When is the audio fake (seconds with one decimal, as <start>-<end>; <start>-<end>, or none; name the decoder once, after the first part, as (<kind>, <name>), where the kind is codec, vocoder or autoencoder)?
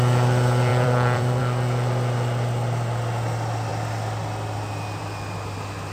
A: 0.7-1.4 (vocoder, BigVGAN v2)